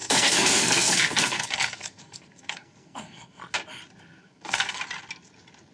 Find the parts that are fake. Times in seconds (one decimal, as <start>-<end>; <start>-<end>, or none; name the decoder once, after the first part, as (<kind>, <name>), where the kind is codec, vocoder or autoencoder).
0.0-3.4 (codec, SNAC); 4.2-4.8